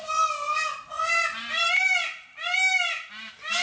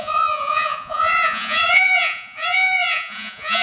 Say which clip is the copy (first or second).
second